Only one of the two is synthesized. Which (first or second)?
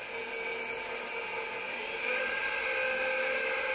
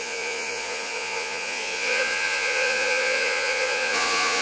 second